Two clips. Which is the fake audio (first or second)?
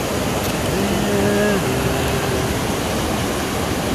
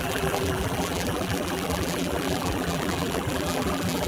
second